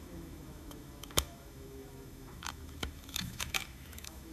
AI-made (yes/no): yes